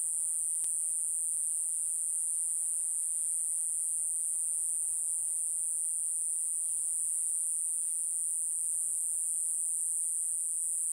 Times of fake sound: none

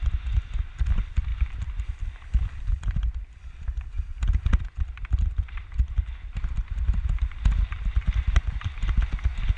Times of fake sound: 0.0-9.6 (vocoder, BigVGAN v2)

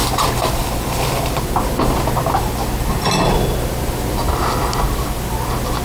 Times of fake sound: 0.0-1.9 (vocoder, BigVGAN v2)